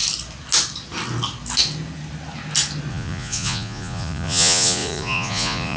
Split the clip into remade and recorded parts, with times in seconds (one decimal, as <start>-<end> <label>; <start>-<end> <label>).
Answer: 0.0-2.9 recorded; 2.9-5.8 remade